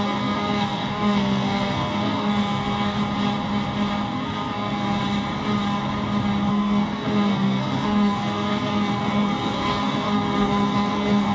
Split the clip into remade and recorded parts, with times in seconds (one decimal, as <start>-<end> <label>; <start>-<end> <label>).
0.0-3.0 remade; 3.0-4.1 recorded; 4.1-5.0 remade; 5.0-6.5 recorded; 6.5-11.3 remade